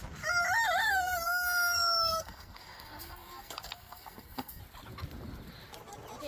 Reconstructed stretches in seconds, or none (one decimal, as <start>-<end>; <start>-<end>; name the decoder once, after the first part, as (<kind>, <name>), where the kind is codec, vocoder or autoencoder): 0.8-4.6 (codec, SNAC)